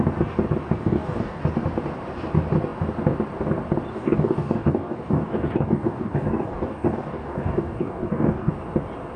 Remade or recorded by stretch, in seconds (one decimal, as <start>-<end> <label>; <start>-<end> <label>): 0.0-0.8 recorded; 0.8-1.4 remade; 1.4-3.9 recorded; 3.9-8.5 remade; 8.5-9.2 recorded